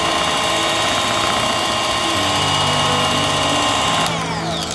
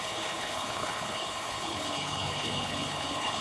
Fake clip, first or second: second